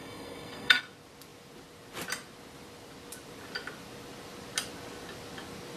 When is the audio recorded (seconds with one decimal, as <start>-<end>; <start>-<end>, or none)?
0.8-5.8